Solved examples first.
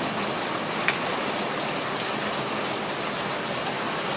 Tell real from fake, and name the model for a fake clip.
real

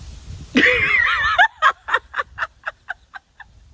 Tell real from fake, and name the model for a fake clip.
real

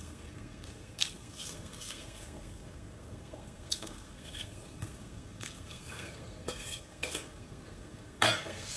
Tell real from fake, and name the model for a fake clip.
fake, codec, SNAC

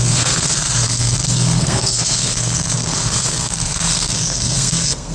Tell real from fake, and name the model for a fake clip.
fake, codec, SNAC